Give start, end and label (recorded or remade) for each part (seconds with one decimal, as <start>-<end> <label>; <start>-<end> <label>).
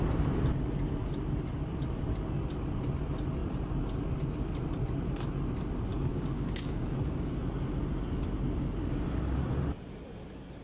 0.0-5.9 recorded; 5.9-7.3 remade; 7.3-10.6 recorded